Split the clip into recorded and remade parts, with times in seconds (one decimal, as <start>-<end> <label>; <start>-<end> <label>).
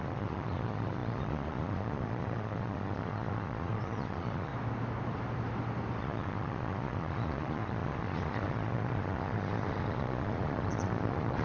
0.0-4.5 remade; 4.5-6.0 recorded; 6.0-11.4 remade